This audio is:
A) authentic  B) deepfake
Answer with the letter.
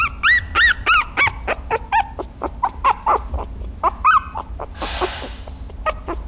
A